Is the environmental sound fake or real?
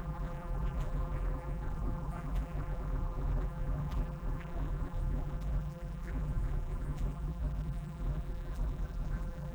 fake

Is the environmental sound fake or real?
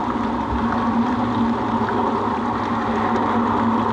real